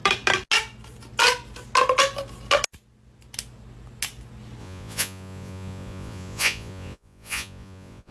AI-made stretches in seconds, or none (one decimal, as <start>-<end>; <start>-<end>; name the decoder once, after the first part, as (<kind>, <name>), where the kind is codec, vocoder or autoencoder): 4.6-8.1 (vocoder, Vocos)